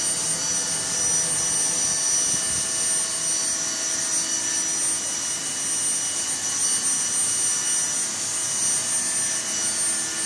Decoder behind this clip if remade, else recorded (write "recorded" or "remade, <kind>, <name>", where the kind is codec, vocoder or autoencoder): recorded